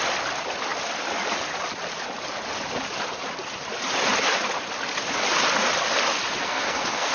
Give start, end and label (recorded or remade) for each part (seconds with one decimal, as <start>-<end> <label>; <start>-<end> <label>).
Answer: 0.0-6.4 recorded; 6.4-7.1 remade